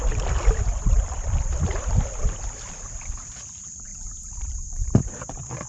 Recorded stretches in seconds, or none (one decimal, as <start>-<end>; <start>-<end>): none